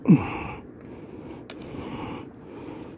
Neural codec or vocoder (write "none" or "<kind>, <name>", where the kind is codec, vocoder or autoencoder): none